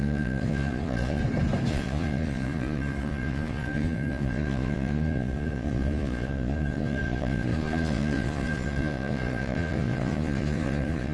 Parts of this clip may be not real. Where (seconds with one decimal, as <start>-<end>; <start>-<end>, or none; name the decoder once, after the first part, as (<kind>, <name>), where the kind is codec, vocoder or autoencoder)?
0.0-1.2 (vocoder, Vocos); 1.7-11.1